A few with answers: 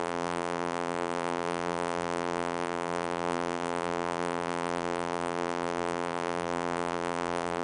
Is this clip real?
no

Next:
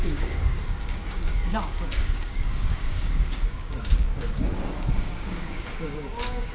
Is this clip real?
no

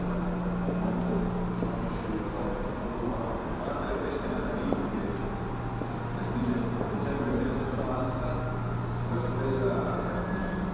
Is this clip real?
yes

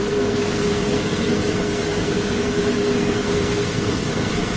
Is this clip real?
no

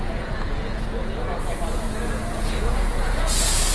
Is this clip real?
no